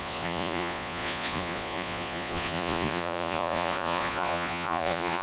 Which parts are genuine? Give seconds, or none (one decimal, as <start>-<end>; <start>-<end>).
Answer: none

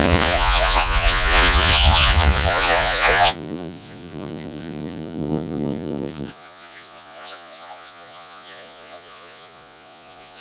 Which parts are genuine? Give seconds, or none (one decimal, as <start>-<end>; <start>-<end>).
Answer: none